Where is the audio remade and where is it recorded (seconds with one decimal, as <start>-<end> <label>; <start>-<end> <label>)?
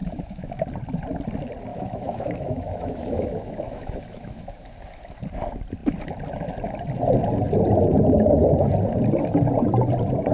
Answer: 0.0-0.6 remade; 0.6-1.7 recorded; 1.7-4.6 remade; 4.6-10.3 recorded